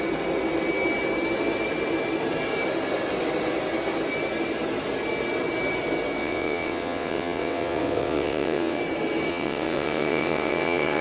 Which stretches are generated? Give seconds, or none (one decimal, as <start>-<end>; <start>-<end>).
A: 6.2-8.8; 9.3-11.0